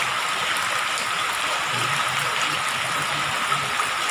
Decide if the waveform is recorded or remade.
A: recorded